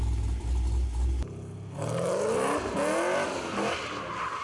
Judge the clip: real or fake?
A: real